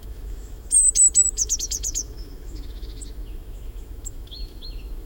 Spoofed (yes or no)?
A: yes